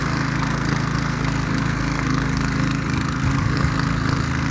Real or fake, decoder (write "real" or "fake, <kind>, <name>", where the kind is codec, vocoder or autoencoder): fake, codec, SNAC